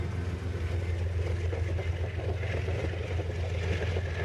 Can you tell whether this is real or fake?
real